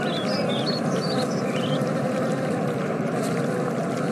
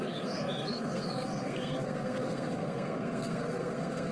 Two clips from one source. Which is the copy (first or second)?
second